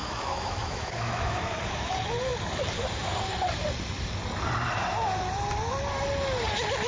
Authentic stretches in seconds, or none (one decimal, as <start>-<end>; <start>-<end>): 1.9-6.9